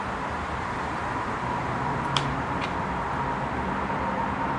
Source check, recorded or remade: remade